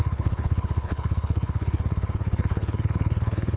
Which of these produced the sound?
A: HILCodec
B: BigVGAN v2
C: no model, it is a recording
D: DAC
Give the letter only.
A